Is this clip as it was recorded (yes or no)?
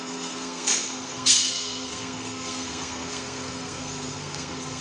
no